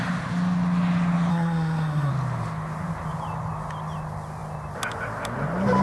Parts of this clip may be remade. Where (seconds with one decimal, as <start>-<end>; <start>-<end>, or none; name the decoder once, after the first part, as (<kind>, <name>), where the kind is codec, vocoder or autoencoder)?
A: 1.3-2.1 (codec, SNAC)